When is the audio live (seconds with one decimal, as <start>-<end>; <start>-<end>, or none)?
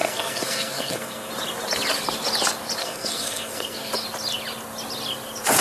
1.3-2.8; 3.9-5.6